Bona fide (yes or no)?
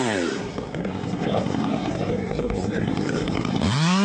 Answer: no